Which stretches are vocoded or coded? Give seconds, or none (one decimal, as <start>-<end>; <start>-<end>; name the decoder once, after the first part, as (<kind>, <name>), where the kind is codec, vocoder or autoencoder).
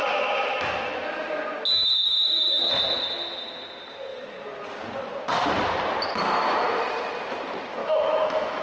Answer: 1.7-2.6 (autoencoder, DAC-VAE); 7.8-8.6